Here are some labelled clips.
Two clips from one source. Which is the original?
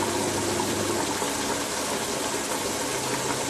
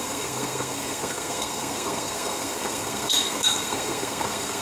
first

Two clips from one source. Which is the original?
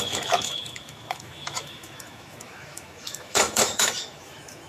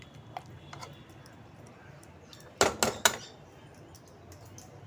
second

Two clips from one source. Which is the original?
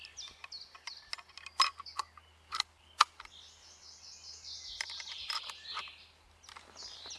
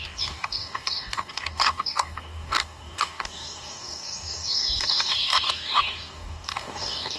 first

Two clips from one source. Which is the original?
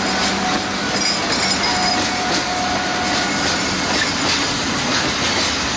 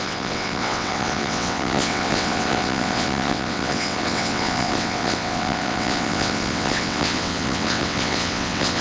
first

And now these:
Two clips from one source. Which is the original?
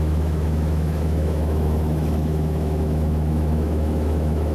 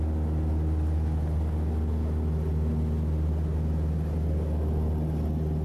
second